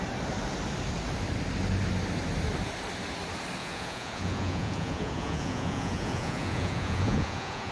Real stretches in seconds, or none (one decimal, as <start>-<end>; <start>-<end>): 0.0-3.6